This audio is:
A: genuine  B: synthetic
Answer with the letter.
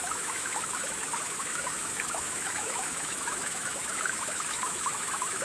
B